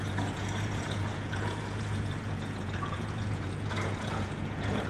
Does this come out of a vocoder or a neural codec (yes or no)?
yes